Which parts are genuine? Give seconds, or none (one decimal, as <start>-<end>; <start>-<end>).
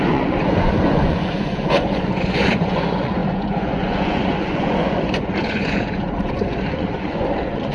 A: none